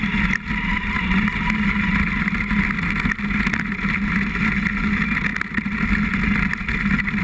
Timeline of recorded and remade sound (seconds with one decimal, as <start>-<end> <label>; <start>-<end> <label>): 0.0-7.2 recorded